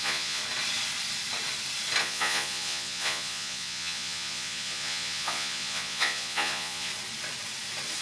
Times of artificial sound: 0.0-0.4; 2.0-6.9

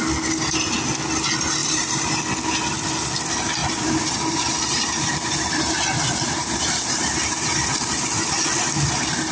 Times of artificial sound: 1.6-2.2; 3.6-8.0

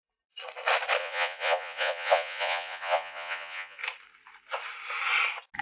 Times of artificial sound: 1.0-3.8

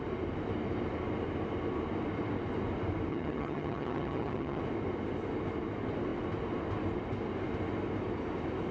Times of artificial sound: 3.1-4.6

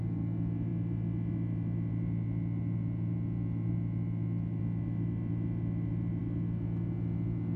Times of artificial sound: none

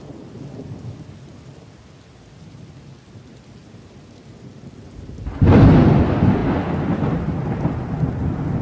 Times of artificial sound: none

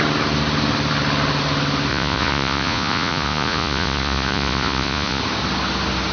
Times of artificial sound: 1.9-5.2

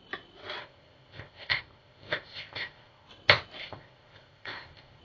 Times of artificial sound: 0.6-3.1; 3.6-5.0